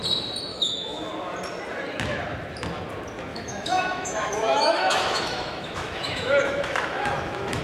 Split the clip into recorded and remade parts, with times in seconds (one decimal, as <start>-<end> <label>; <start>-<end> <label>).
0.0-0.5 recorded; 0.5-1.1 remade; 1.1-3.3 recorded; 3.3-7.6 remade